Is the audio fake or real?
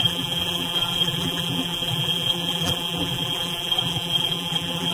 fake